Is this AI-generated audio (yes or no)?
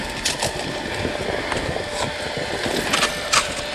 no